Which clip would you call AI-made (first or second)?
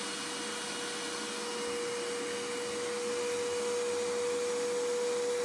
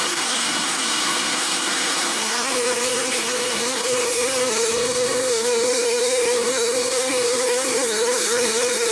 second